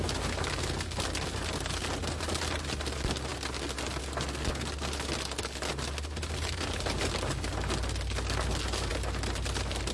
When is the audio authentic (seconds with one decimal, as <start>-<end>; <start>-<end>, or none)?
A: 0.0-9.9